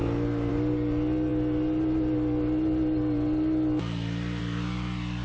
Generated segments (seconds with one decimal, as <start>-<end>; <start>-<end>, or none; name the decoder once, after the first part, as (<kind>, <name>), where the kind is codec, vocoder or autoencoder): none